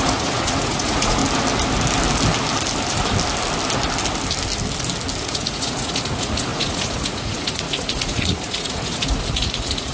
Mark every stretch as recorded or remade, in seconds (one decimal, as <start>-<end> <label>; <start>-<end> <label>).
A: 0.0-1.2 remade; 1.2-5.2 recorded; 5.2-9.9 remade